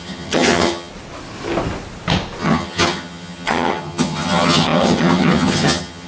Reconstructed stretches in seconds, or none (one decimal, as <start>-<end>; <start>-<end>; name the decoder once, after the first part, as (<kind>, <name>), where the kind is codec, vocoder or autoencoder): 0.0-0.9 (vocoder, HiFi-GAN); 2.4-6.1